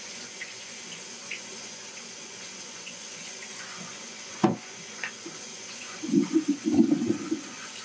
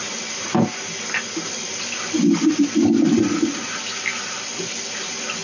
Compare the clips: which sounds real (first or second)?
second